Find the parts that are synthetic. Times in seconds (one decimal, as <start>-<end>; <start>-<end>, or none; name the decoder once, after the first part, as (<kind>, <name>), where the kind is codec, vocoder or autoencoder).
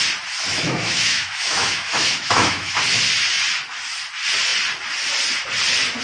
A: 0.5-2.8 (autoencoder, DAC-VAE)